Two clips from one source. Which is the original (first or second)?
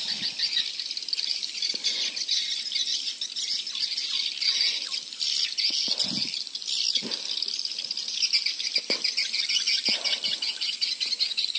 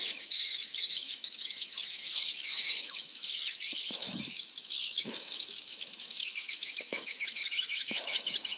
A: first